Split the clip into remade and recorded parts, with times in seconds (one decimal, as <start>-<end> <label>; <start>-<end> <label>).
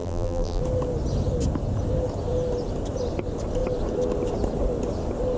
0.0-0.6 remade; 0.6-5.4 recorded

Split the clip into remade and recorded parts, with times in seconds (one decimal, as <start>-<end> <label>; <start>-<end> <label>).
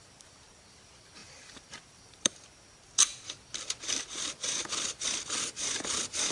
0.0-3.1 remade; 3.1-5.4 recorded; 5.4-6.3 remade